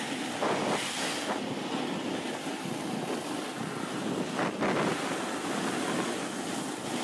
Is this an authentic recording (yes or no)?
yes